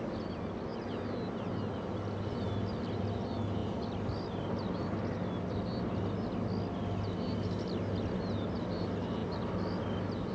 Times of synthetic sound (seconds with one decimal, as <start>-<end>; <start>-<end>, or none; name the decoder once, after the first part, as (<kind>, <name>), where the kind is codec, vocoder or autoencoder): none